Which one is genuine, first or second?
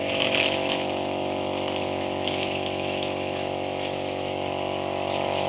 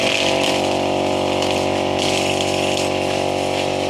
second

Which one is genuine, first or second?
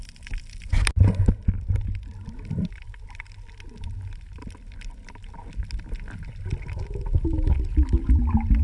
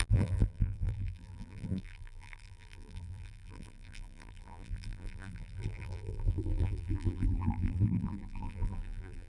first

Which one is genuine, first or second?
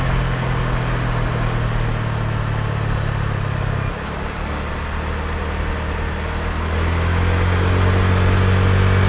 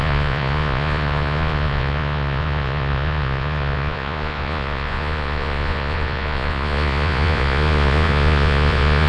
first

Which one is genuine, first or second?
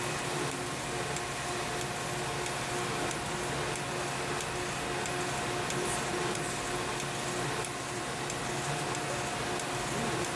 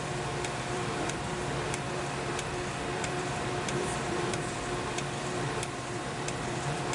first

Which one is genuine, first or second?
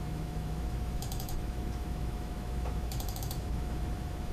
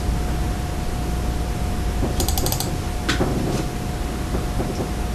second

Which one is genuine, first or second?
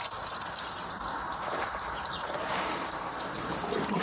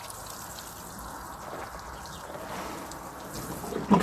second